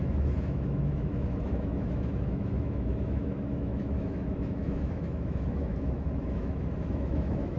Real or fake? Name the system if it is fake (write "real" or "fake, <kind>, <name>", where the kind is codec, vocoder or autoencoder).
fake, autoencoder, DAC-VAE